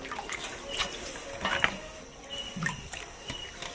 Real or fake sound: real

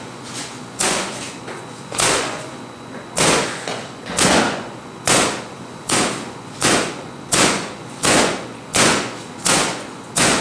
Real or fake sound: fake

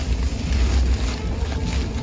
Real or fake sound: real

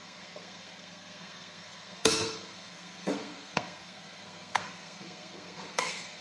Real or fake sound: fake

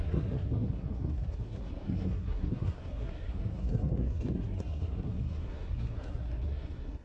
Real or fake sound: fake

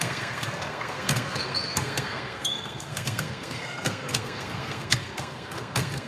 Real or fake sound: fake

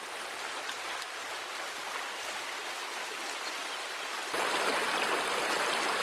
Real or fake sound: real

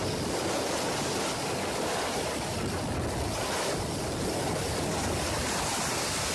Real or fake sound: real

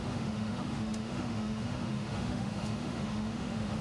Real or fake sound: fake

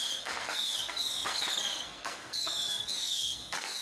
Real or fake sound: fake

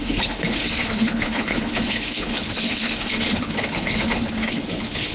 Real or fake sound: fake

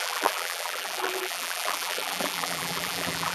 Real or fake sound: fake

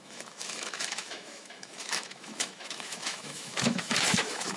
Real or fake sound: fake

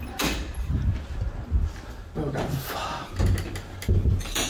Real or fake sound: real